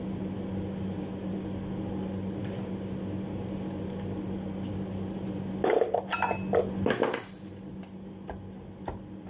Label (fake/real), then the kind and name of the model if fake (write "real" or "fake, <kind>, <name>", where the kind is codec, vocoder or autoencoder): real